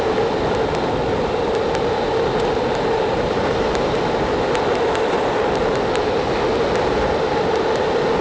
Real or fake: real